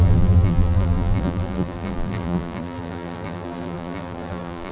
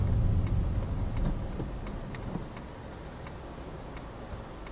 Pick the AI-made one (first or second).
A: first